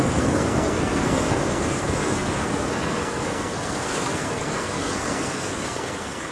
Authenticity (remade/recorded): remade